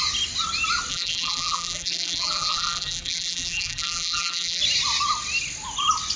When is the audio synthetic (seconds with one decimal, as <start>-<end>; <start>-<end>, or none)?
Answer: 0.9-4.6